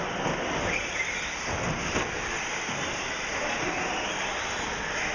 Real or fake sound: real